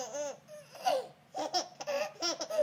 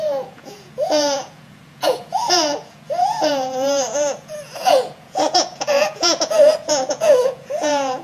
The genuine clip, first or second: first